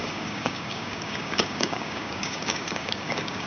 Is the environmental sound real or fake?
fake